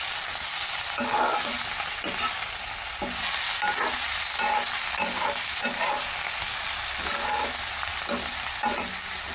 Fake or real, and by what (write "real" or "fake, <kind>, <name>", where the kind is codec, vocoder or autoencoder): real